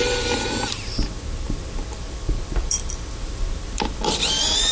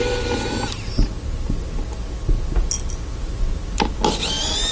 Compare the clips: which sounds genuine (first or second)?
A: second